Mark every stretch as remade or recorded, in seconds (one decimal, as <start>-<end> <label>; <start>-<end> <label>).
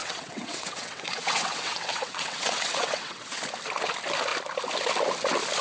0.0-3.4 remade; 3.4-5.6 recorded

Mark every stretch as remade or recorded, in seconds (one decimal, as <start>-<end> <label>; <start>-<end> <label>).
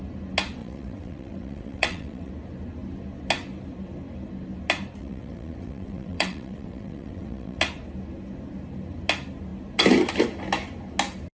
0.0-0.6 recorded; 0.6-2.3 remade; 2.3-5.0 recorded; 5.0-7.6 remade; 7.6-11.3 recorded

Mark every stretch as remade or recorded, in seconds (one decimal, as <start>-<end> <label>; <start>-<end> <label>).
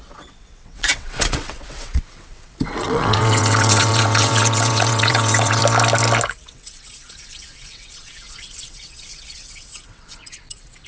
0.0-5.6 remade; 5.6-6.3 recorded; 6.3-10.9 remade